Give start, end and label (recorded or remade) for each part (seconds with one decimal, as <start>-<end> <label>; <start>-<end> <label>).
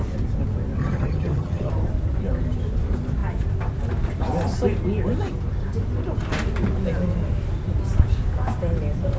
0.0-0.8 recorded; 0.8-1.7 remade; 1.7-9.2 recorded